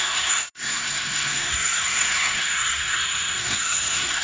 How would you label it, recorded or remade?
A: remade